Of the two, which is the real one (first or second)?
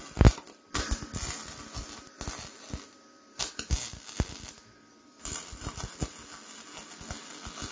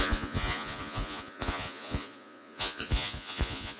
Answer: first